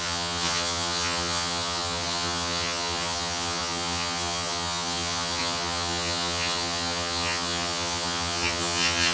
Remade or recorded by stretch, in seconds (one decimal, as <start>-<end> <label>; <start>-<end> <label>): 0.0-9.1 remade